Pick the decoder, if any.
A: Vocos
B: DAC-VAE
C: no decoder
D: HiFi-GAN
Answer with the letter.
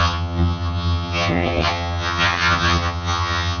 D